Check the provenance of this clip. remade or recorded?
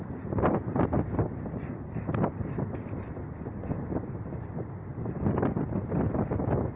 recorded